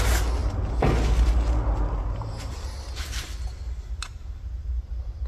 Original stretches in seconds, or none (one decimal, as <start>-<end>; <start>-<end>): 0.0-5.3